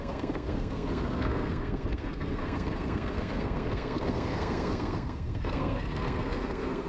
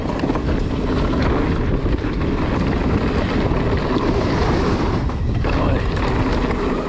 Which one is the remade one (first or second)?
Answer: first